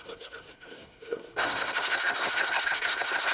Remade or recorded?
remade